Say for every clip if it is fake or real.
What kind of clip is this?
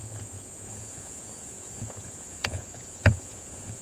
fake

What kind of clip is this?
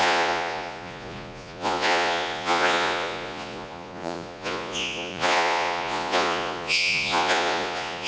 fake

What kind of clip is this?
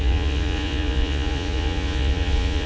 fake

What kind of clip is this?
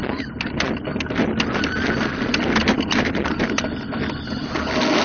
real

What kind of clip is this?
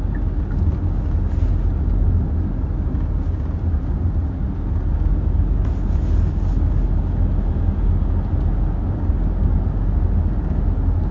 real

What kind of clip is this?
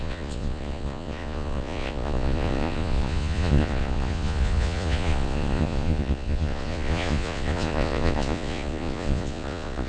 fake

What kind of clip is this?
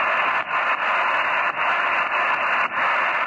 real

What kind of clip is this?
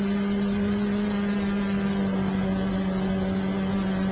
real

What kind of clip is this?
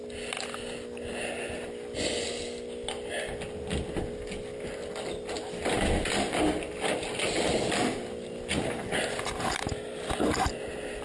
real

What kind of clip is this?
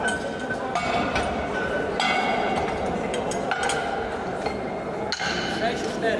real